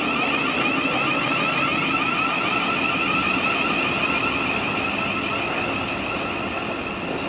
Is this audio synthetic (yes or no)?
no